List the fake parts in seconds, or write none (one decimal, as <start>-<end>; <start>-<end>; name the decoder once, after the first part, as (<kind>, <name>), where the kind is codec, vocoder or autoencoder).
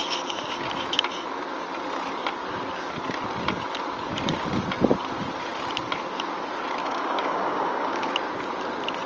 6.8-8.1 (codec, DAC)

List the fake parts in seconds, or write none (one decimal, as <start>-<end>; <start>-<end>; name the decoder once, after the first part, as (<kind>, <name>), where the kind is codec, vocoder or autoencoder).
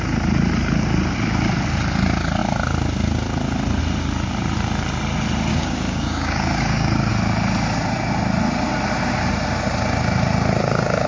5.5-7.1 (codec, DAC)